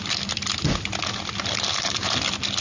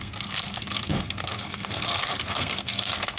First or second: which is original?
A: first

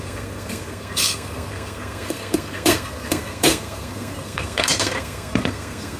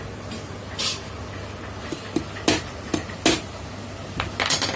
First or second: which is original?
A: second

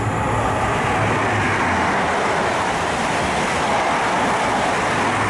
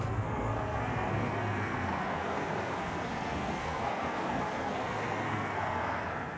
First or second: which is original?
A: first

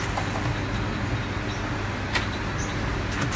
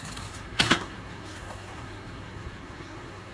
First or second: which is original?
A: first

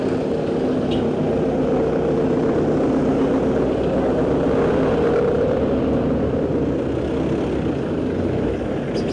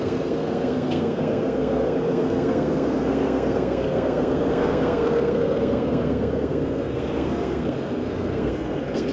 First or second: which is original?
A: first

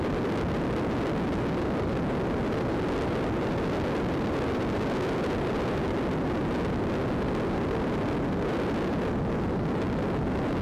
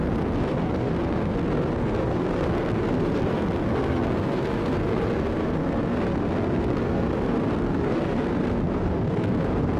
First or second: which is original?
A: first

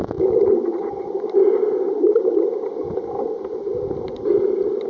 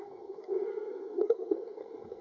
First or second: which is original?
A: first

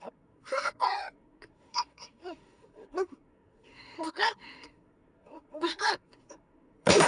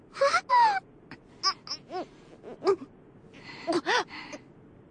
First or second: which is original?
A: second